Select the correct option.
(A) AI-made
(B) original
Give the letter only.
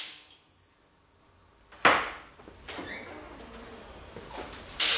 B